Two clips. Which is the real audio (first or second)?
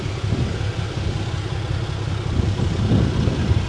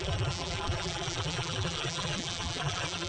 first